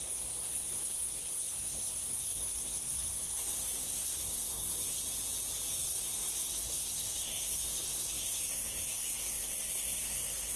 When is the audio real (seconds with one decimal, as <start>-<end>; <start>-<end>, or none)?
5.0-5.7